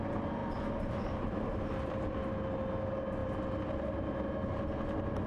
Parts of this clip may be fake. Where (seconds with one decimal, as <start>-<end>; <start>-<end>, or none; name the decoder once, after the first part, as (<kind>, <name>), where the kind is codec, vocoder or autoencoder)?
0.4-2.4 (vocoder, BigVGAN v2); 3.2-4.1